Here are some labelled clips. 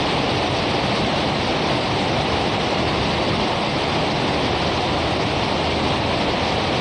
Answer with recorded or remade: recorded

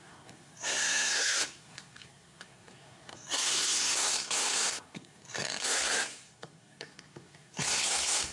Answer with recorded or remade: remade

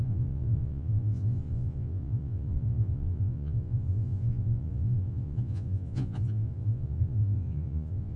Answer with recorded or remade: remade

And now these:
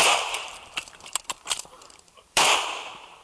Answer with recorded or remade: remade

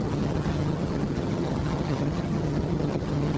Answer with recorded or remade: remade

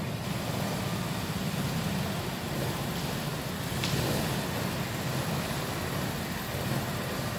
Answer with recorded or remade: recorded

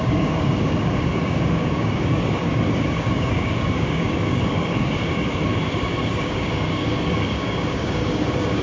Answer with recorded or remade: remade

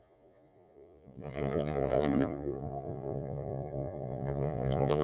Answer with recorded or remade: remade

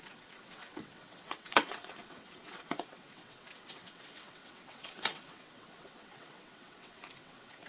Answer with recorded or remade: remade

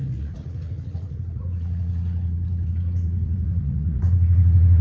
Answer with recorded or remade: remade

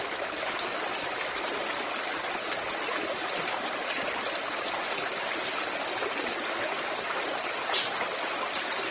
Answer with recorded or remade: recorded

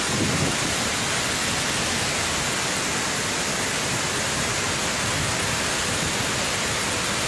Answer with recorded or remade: recorded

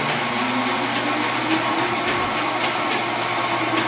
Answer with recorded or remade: recorded